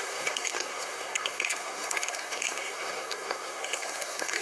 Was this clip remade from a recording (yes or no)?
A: yes